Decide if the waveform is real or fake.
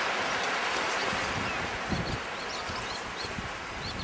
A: real